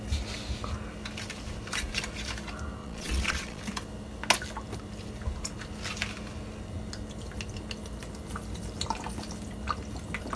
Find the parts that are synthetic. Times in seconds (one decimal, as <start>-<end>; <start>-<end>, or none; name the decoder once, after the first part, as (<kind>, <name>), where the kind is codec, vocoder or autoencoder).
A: 2.8-3.6 (vocoder, Vocos)